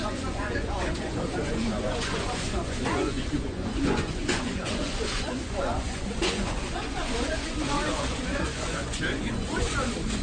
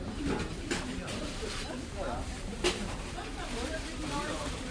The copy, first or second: first